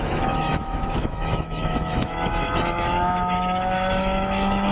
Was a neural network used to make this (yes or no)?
yes